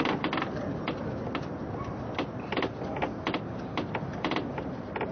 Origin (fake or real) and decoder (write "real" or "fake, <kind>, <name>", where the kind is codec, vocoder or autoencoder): real